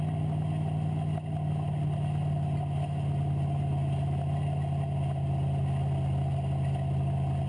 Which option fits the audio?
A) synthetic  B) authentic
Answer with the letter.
B